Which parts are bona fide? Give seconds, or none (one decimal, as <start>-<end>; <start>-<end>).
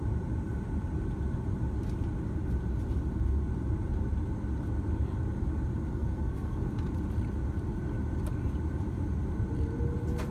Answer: 0.0-5.9; 6.7-10.3